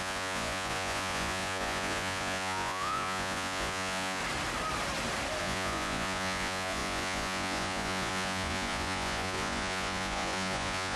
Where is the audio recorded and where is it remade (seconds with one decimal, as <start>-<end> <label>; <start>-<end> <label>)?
0.0-4.2 remade; 4.2-5.4 recorded; 5.4-11.0 remade